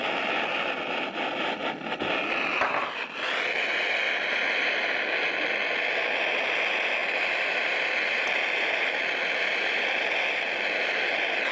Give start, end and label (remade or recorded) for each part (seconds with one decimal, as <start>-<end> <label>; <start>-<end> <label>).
0.0-7.0 recorded; 7.0-11.5 remade